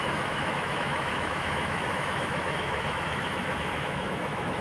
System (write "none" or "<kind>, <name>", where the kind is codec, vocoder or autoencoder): autoencoder, DAC-VAE